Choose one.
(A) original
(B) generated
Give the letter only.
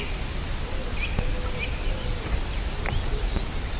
A